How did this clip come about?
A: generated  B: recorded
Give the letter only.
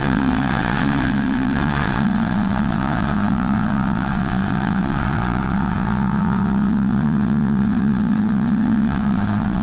A